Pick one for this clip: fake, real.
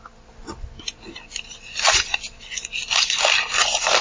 real